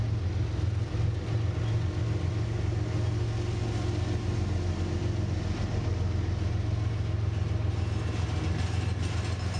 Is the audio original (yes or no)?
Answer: yes